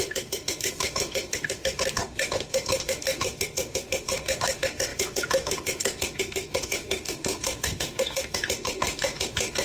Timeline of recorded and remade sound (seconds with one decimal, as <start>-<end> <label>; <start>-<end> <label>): 0.0-9.6 remade